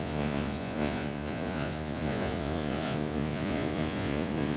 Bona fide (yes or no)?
no